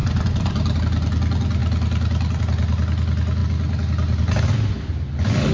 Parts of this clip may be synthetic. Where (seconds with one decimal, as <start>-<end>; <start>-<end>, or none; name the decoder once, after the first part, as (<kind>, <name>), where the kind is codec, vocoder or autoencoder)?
0.0-0.8 (vocoder, BigVGAN v2)

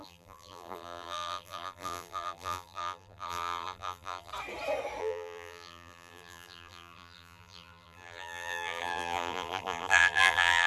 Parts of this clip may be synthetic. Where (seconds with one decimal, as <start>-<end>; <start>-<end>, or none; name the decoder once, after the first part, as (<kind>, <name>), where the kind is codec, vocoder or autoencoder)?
0.0-4.3 (vocoder, BigVGAN v2); 5.0-10.7

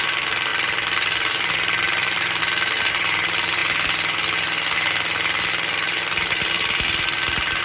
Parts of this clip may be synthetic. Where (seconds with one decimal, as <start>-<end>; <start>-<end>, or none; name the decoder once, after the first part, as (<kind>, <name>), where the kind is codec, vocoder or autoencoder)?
0.5-2.4 (vocoder, BigVGAN v2)

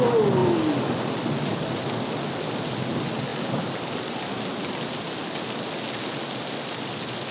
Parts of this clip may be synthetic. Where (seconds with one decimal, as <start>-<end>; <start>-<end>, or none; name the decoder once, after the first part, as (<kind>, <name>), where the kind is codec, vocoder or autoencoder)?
none

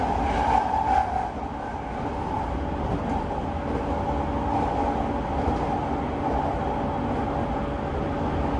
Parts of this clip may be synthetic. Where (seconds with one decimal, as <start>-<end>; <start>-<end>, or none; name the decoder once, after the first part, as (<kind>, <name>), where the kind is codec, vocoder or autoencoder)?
none

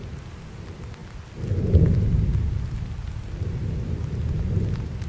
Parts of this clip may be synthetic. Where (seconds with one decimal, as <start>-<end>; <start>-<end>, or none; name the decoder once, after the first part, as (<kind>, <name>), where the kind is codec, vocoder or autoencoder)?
none

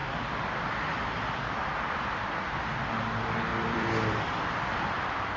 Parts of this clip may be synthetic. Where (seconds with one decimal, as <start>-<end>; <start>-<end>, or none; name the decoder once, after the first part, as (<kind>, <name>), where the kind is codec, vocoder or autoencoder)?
0.0-2.6 (vocoder, BigVGAN v2); 3.5-5.4